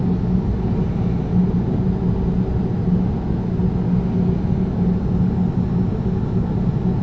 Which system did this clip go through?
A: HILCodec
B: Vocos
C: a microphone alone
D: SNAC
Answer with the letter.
C